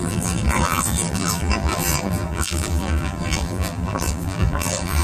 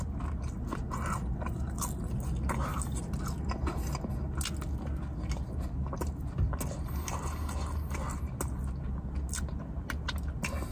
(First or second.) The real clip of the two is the second